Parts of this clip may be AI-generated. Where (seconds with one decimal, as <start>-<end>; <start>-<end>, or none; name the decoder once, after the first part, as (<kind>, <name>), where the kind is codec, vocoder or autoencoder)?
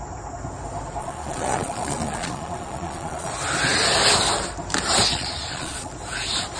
1.0-3.3 (vocoder, Vocos); 5.1-5.9